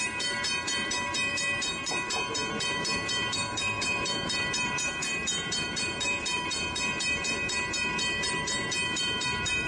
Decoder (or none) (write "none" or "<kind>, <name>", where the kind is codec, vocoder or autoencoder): vocoder, BigVGAN v2